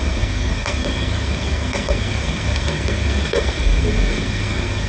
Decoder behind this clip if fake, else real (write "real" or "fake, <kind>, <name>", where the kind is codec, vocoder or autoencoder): fake, codec, SNAC